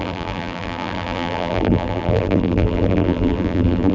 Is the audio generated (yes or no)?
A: yes